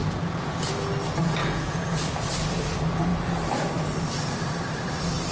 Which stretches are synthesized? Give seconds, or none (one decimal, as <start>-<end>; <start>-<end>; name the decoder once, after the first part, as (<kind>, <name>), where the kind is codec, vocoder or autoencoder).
0.0-0.7 (vocoder, Vocos); 1.4-2.0